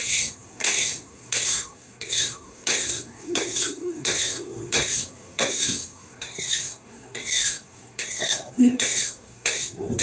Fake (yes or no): yes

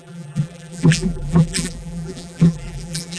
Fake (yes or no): yes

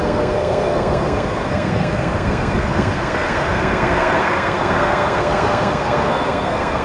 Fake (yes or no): yes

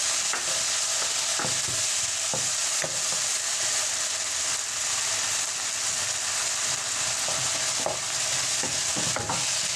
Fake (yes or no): no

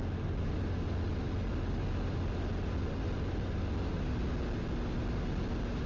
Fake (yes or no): no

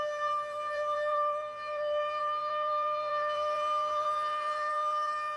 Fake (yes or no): yes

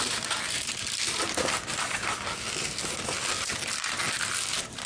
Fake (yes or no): yes